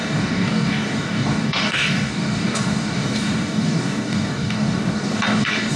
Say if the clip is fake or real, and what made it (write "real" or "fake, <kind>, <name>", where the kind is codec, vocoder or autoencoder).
fake, codec, DAC